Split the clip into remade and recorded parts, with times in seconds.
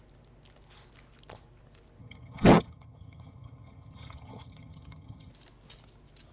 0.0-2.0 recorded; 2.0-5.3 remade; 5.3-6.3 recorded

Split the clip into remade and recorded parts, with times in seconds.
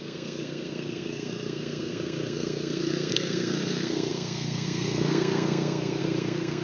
0.0-6.6 remade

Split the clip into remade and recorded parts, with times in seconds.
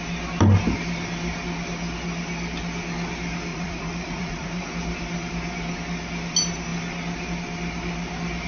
0.0-3.5 recorded; 3.5-4.7 remade; 4.7-8.5 recorded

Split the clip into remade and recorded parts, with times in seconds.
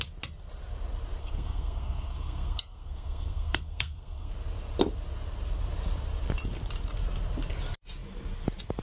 0.0-1.2 recorded; 1.2-4.3 remade; 4.3-8.8 recorded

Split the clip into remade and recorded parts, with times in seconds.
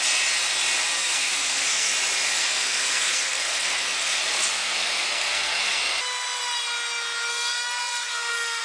0.0-1.0 recorded; 1.0-1.9 remade; 1.9-2.4 recorded; 2.4-5.8 remade; 5.8-7.3 recorded; 7.3-8.6 remade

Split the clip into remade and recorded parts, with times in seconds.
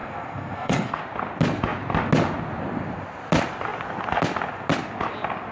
0.0-1.0 remade; 1.0-5.5 recorded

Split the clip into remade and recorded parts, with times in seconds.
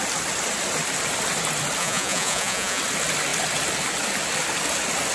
0.0-1.8 recorded; 1.8-2.8 remade; 2.8-5.1 recorded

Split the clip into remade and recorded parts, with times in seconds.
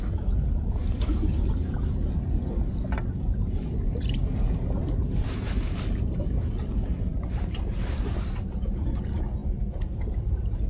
0.0-10.7 recorded